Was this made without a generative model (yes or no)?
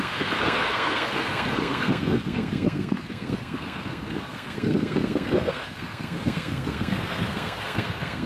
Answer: no